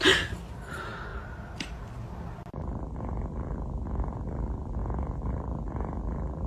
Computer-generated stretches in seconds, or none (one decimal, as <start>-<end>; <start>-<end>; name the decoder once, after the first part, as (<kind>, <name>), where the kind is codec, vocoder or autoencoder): 1.1-1.8 (vocoder, BigVGAN v2)